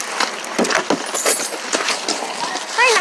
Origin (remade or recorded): recorded